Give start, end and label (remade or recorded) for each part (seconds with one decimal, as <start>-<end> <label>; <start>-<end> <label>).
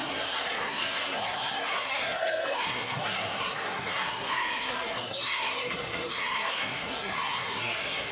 0.0-8.1 remade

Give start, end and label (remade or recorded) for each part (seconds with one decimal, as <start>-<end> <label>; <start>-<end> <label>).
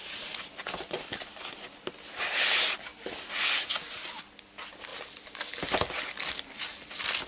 0.0-7.3 recorded